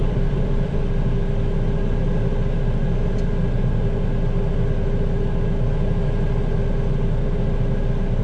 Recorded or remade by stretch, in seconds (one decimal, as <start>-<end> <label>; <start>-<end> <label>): 0.0-0.8 remade; 0.8-8.2 recorded